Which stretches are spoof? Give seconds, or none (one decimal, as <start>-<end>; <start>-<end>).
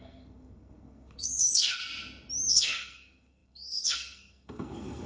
0.0-1.8; 2.5-5.1